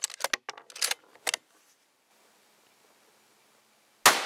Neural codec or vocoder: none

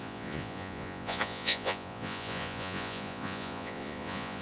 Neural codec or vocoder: vocoder, Vocos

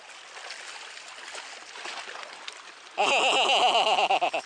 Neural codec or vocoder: none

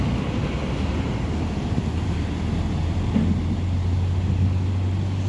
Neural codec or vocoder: none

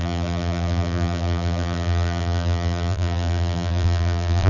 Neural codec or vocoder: vocoder, BigVGAN v2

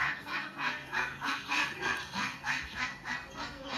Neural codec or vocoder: codec, SNAC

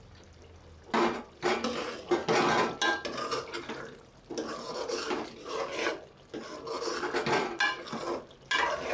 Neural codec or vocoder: none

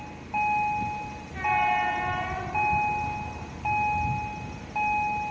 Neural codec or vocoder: none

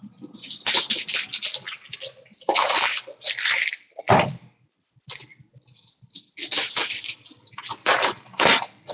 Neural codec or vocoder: vocoder, BigVGAN v2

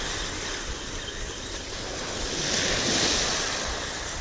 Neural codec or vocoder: none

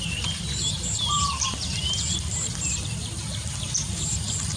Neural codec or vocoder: vocoder, BigVGAN v2